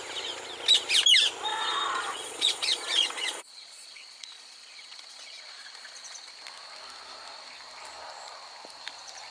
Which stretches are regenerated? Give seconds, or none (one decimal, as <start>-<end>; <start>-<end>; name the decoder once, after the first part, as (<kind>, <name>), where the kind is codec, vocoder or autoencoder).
1.5-6.3 (vocoder, Vocos)